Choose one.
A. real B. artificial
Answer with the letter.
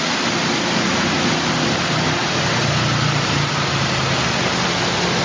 A